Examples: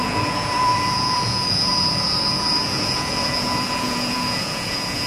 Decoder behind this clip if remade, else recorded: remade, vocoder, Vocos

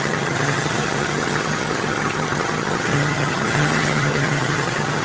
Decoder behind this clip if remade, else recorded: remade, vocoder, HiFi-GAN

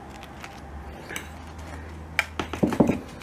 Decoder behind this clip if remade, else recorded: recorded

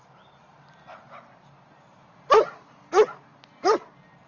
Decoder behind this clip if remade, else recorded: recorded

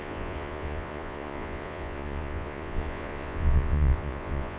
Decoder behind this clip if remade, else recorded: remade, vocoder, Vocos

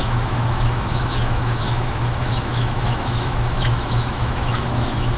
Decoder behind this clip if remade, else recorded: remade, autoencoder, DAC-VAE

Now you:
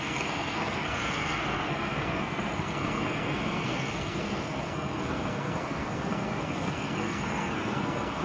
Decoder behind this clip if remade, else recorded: remade, codec, SNAC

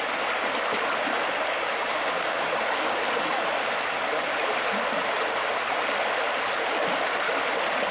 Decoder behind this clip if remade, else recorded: recorded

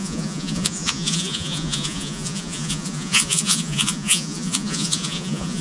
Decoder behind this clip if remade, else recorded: remade, vocoder, Vocos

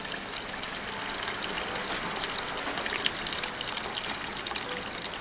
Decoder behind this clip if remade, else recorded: recorded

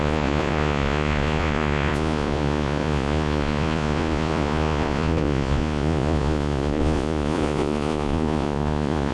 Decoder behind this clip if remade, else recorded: remade, vocoder, Vocos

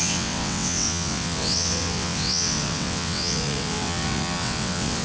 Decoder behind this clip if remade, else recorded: remade, vocoder, WaveNeXt